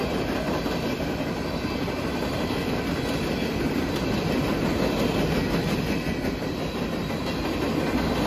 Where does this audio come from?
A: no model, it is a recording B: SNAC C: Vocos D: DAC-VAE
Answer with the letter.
A